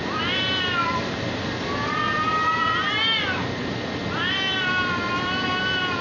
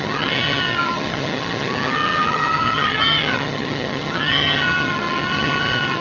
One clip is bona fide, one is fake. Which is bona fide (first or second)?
first